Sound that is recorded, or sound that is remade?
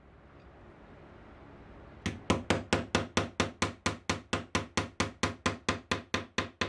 recorded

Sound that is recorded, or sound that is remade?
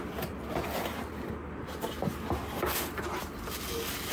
recorded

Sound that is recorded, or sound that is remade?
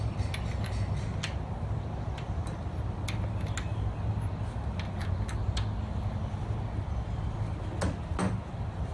recorded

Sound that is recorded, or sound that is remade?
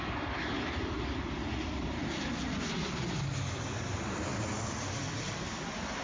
recorded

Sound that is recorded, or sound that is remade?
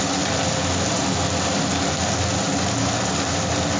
recorded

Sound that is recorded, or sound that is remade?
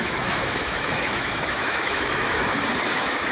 remade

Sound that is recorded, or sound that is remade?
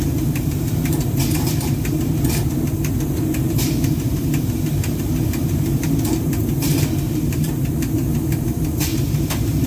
remade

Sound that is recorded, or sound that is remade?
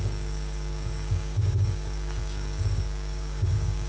remade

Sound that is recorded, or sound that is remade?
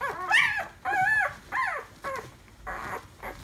recorded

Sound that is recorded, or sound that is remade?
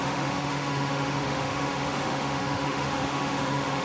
remade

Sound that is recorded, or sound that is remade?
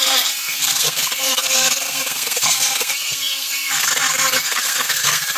remade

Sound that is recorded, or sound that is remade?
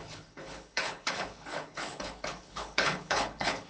remade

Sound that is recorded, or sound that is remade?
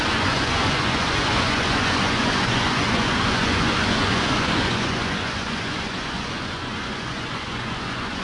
remade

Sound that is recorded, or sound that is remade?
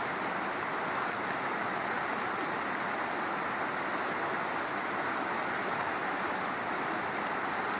recorded